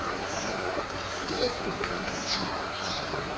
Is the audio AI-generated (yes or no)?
yes